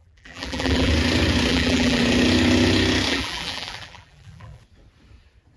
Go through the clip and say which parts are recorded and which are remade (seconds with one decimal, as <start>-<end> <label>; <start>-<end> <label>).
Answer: 0.0-0.9 remade; 0.9-1.5 recorded; 1.5-2.0 remade; 2.0-3.1 recorded; 3.1-4.6 remade; 4.6-5.6 recorded